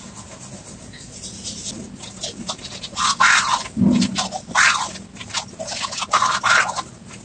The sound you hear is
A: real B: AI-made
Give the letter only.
A